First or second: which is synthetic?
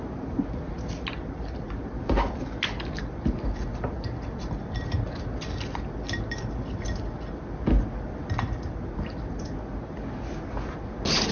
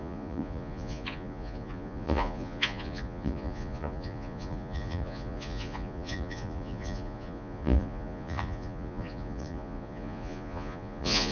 second